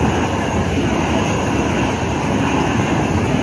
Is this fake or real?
real